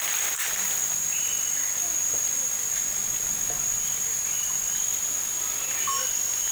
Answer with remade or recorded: recorded